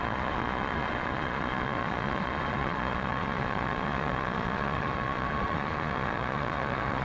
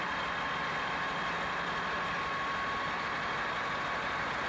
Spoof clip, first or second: first